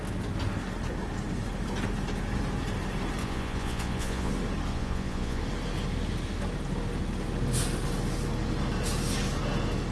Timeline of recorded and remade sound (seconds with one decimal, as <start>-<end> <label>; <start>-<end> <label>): 0.0-3.2 recorded; 3.2-4.3 remade; 4.3-4.7 recorded; 4.7-5.4 remade; 5.4-9.9 recorded